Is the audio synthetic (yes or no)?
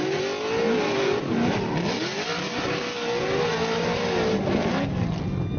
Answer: no